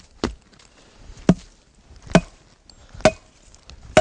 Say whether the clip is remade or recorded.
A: recorded